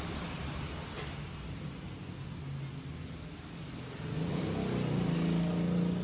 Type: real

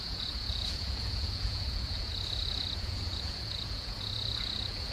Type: fake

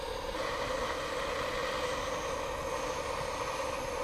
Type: real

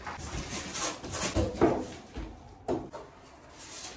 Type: real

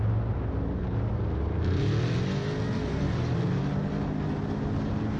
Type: real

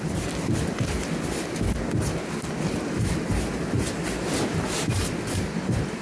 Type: real